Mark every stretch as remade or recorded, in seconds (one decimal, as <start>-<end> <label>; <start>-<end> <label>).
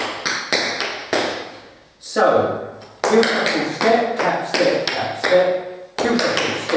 0.0-1.0 recorded; 1.0-2.2 remade; 2.2-6.8 recorded